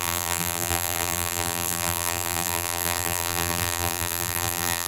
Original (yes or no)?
no